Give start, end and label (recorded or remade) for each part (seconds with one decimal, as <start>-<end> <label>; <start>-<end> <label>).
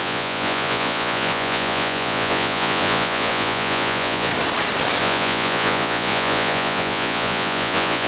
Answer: 0.0-4.3 remade; 4.3-5.0 recorded; 5.0-8.1 remade